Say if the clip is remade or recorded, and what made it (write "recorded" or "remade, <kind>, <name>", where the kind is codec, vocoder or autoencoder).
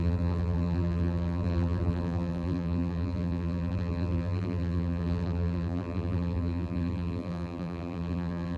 remade, vocoder, BigVGAN v2